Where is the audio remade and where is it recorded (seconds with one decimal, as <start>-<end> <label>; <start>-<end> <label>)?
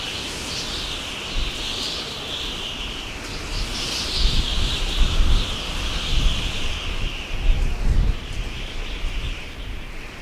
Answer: 0.0-10.2 recorded